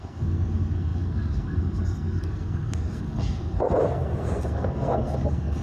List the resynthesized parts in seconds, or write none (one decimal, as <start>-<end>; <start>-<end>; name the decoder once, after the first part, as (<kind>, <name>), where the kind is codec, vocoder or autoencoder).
0.0-5.6 (codec, SNAC)